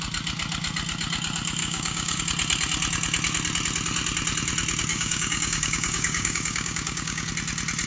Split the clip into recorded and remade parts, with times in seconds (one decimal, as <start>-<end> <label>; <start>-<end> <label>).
0.0-1.6 recorded; 1.6-2.2 remade; 2.2-4.9 recorded; 4.9-7.3 remade; 7.3-7.9 recorded